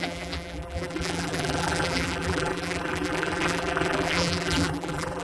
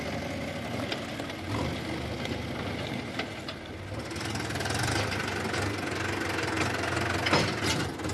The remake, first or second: first